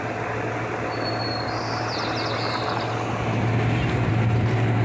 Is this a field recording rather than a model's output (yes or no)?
yes